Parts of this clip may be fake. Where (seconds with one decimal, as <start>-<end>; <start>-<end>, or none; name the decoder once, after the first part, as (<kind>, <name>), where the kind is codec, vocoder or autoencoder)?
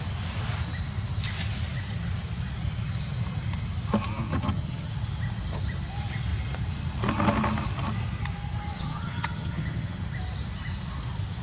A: 4.3-4.9 (vocoder, HiFi-GAN); 8.7-10.0